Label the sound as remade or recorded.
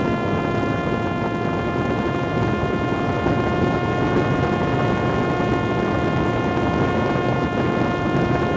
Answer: recorded